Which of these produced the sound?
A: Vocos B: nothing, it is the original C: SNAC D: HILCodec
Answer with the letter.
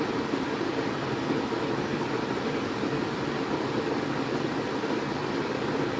B